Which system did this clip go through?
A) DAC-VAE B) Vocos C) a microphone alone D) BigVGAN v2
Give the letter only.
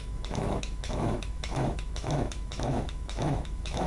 A